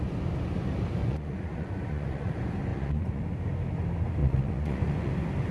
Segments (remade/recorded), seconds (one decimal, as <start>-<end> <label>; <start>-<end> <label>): 0.0-1.0 recorded; 1.0-2.3 remade; 2.3-2.7 recorded; 2.7-3.2 remade; 3.2-4.2 recorded; 4.2-5.1 remade; 5.1-5.5 recorded